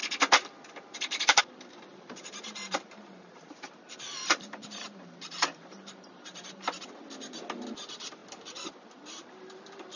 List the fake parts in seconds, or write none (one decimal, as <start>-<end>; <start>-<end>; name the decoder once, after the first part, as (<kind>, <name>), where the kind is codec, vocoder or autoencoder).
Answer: 1.9-6.8 (vocoder, BigVGAN v2)